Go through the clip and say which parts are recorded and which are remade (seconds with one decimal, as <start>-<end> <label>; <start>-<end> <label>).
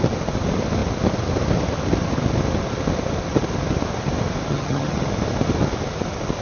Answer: 0.0-4.5 recorded; 4.5-5.1 remade; 5.1-6.4 recorded